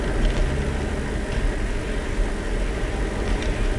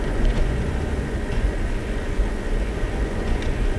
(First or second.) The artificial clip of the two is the second